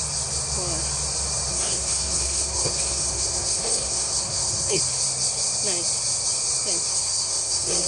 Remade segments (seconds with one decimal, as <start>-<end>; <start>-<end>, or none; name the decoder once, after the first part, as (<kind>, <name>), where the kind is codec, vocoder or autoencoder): 1.5-4.8 (codec, SNAC); 6.9-7.9